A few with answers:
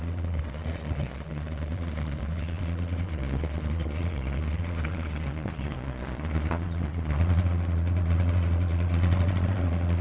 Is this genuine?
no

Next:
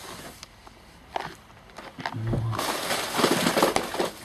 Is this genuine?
yes